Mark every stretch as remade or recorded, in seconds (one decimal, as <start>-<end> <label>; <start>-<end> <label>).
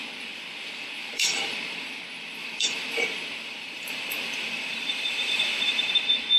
0.0-1.0 recorded; 1.0-2.0 remade; 2.0-2.4 recorded; 2.4-6.0 remade; 6.0-6.4 recorded